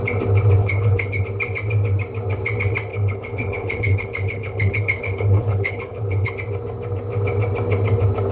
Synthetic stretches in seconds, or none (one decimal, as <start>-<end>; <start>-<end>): 0.6-1.2; 2.9-6.3